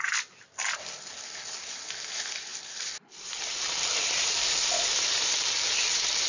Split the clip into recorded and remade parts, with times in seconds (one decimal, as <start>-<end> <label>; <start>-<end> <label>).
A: 0.0-2.5 recorded; 2.5-5.3 remade; 5.3-6.3 recorded